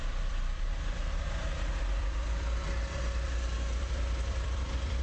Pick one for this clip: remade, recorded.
remade